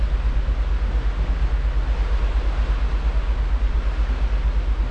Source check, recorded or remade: recorded